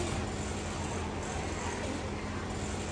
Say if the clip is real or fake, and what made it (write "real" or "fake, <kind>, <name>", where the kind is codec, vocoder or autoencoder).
real